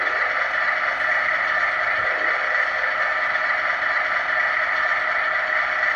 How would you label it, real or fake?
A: real